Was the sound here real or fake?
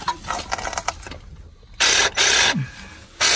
real